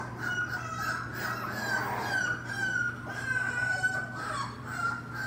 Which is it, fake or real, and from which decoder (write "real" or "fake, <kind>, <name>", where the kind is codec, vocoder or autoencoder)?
real